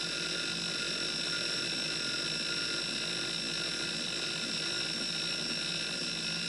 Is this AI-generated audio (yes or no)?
no